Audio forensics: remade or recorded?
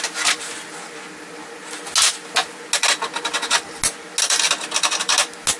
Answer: recorded